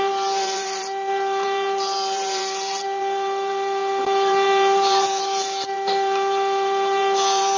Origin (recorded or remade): remade